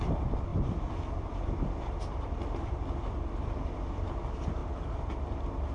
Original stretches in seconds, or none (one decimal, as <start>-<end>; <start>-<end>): 0.0-0.5; 3.9-5.7